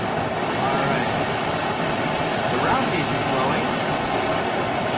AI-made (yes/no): no